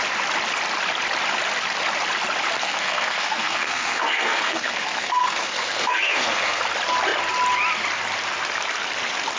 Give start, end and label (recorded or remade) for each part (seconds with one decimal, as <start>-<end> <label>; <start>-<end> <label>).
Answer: 0.0-2.6 recorded; 2.6-6.6 remade; 6.6-9.4 recorded